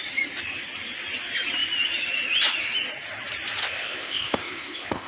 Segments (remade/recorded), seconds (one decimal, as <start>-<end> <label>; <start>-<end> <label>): 0.0-3.6 recorded; 3.6-5.1 remade